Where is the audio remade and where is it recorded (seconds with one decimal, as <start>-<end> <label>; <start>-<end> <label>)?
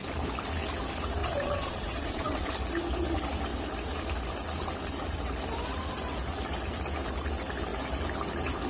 0.0-1.2 recorded; 1.2-2.5 remade; 2.5-8.7 recorded